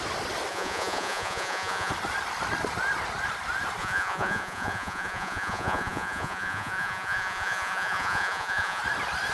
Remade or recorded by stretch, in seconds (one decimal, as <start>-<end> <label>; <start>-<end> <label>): 0.0-0.5 recorded; 0.5-1.9 remade; 1.9-3.8 recorded; 3.8-8.8 remade; 8.8-9.3 recorded